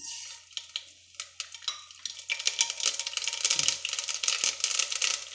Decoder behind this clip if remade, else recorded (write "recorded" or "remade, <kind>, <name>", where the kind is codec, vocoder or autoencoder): recorded